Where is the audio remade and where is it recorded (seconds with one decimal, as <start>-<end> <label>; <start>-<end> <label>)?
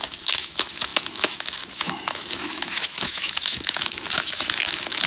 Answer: 0.0-5.1 remade